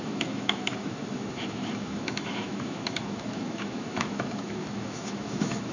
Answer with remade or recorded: remade